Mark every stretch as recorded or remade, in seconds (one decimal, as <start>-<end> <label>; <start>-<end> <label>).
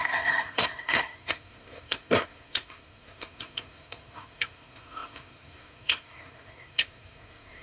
0.0-7.6 remade